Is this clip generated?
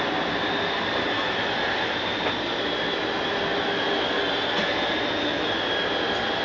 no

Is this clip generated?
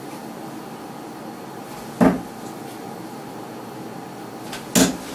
no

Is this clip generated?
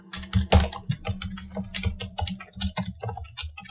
no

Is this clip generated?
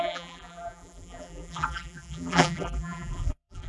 yes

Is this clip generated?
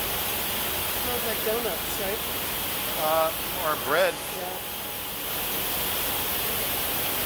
no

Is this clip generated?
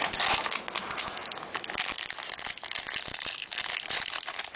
no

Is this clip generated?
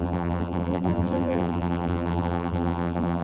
yes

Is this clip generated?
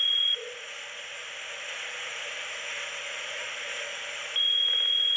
no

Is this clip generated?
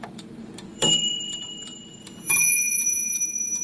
yes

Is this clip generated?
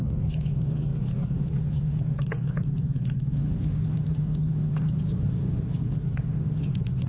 no